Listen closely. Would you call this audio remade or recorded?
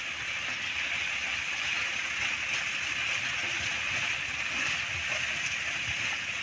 recorded